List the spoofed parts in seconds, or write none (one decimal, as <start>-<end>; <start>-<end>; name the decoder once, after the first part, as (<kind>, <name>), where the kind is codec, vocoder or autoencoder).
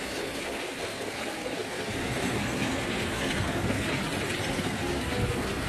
0.0-4.0 (codec, SNAC); 4.5-5.7